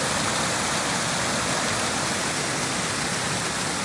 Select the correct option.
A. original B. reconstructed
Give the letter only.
A